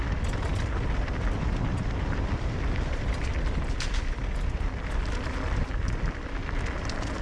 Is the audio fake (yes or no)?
no